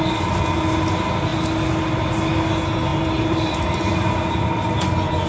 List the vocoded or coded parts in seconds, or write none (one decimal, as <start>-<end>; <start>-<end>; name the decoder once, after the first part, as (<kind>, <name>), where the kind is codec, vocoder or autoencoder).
2.9-3.9 (vocoder, BigVGAN v2)